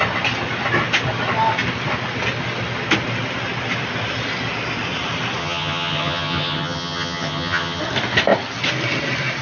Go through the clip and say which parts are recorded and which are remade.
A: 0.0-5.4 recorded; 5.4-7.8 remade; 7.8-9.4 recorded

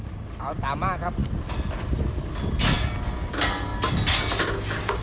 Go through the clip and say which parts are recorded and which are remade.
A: 0.0-5.0 recorded

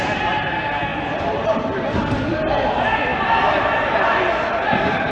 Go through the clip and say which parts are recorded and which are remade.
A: 0.0-5.1 recorded